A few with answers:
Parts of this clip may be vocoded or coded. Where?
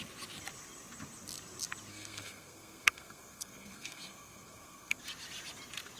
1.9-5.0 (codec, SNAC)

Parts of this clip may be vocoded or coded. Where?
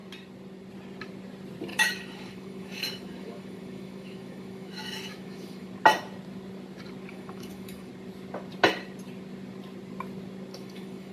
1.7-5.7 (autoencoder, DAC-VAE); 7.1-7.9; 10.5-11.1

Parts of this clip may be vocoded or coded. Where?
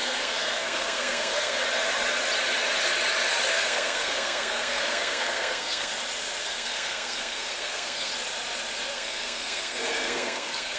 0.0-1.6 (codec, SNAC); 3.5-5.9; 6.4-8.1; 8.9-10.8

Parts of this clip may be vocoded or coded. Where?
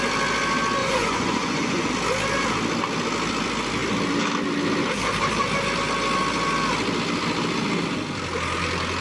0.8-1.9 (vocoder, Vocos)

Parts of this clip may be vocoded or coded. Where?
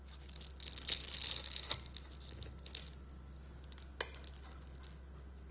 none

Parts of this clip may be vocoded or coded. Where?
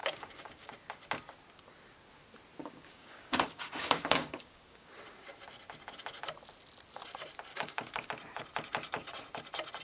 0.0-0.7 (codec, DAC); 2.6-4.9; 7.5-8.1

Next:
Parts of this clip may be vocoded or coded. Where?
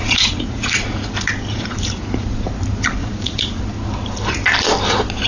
0.0-1.1 (vocoder, Vocos); 1.5-2.5; 3.0-3.6